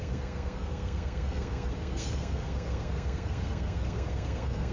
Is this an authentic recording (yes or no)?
no